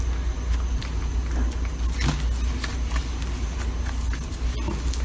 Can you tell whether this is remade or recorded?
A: recorded